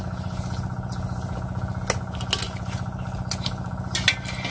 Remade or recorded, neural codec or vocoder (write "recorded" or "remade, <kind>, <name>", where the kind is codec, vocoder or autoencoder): recorded